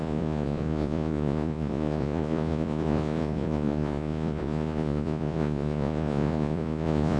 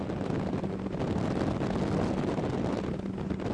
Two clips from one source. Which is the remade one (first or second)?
first